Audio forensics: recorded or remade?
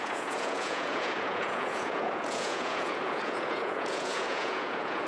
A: remade